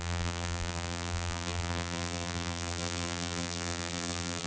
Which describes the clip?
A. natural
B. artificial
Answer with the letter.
B